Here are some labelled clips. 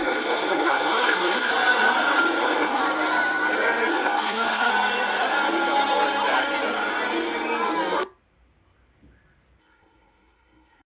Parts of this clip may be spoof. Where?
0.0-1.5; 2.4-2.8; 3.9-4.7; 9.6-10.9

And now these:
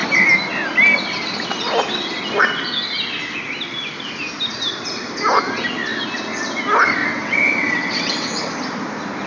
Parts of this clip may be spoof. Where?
7.0-8.5

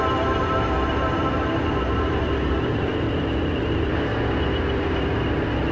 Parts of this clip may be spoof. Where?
0.0-2.9; 3.6-4.1